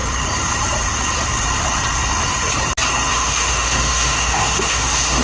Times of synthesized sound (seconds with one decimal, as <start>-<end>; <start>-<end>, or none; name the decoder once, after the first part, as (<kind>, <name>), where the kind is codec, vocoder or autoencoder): 3.1-5.2 (autoencoder, DAC-VAE)